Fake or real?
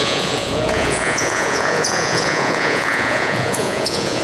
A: fake